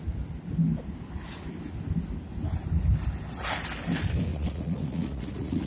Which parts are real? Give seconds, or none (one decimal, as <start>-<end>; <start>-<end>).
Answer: 0.0-4.3